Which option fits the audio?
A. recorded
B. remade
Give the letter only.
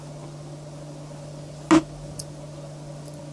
A